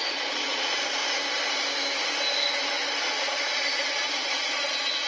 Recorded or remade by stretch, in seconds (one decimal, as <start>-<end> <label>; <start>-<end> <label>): 0.0-1.0 remade; 1.0-3.0 recorded; 3.0-5.1 remade